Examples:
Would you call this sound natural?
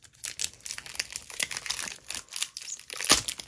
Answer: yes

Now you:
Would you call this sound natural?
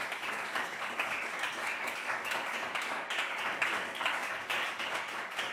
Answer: no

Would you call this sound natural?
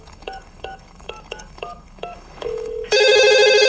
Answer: no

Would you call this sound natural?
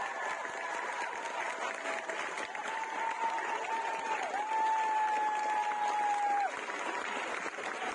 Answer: yes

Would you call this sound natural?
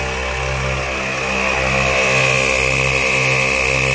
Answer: yes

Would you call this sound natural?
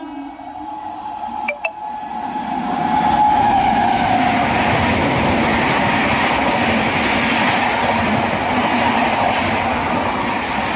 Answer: yes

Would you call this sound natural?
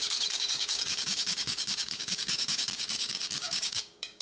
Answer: no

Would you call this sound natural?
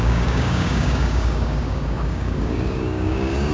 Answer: no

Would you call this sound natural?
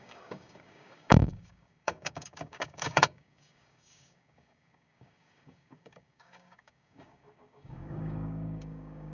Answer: no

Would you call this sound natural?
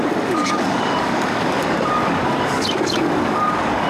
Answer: no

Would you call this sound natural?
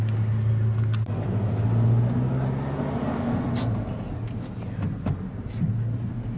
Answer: yes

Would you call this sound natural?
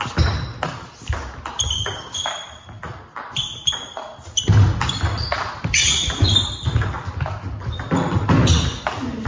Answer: yes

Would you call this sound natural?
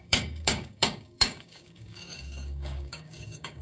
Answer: no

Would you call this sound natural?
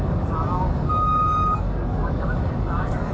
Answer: no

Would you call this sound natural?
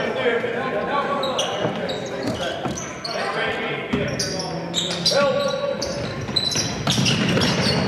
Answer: yes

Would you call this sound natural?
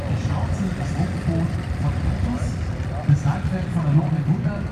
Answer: yes